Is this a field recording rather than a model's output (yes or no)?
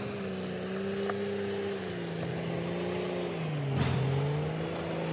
yes